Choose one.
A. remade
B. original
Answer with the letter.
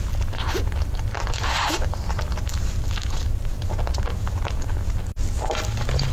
B